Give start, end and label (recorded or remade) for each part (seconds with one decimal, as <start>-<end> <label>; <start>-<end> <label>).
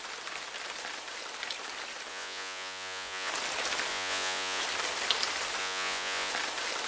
0.0-2.1 recorded; 2.1-3.3 remade; 3.3-3.9 recorded; 3.9-4.6 remade; 4.6-5.6 recorded; 5.6-6.3 remade; 6.3-6.9 recorded